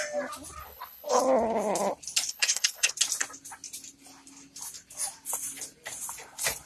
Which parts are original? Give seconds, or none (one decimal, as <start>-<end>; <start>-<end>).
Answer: 0.0-0.6; 1.2-2.3; 2.9-6.7